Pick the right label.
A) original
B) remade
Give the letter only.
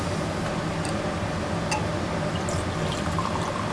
A